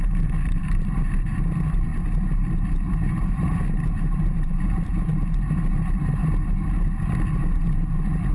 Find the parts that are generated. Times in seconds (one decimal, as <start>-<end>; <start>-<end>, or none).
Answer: 0.0-6.2; 7.4-8.3